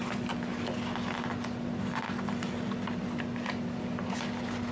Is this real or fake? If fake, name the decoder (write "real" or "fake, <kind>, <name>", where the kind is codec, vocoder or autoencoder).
real